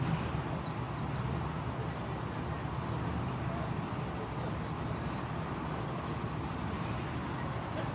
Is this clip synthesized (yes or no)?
no